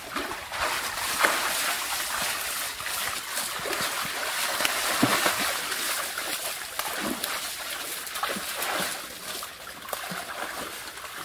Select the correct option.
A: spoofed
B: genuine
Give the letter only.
B